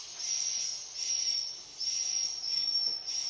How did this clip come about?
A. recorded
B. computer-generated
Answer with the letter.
A